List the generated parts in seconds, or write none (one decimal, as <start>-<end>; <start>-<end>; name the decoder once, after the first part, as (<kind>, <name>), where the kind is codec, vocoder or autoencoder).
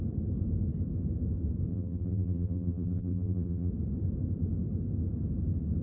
1.7-3.7 (vocoder, BigVGAN v2)